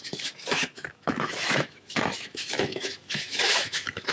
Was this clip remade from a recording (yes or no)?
yes